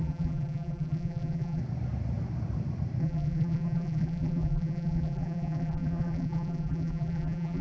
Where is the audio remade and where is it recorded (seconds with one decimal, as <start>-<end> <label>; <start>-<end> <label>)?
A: 0.0-1.6 remade; 1.6-3.0 recorded; 3.0-7.6 remade